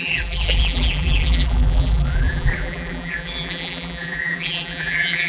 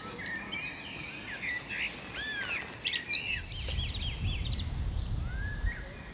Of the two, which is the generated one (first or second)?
first